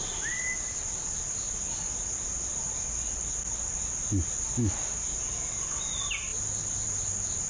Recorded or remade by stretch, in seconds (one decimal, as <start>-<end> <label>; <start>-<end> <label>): 0.0-7.5 recorded